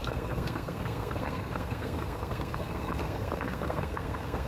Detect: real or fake fake